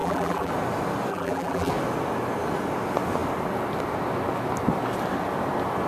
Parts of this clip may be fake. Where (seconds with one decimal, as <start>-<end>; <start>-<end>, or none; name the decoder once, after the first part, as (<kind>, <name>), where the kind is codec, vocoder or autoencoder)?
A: 0.0-0.5 (vocoder, BigVGAN v2); 1.1-1.7